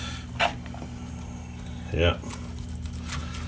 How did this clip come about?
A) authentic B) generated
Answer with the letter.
A